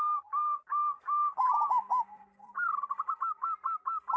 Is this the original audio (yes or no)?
yes